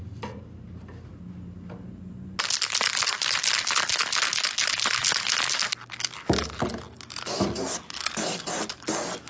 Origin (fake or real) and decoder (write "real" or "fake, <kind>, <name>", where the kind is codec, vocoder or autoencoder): real